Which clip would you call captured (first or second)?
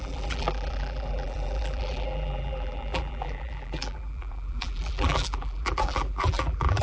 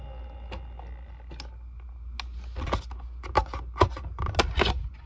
second